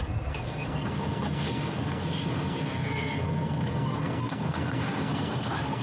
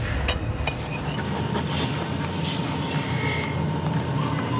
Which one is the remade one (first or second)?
first